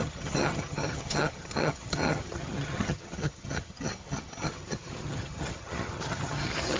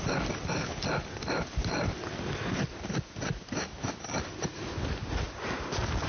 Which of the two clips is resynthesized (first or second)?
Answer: first